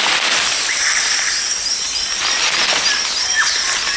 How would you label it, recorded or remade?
recorded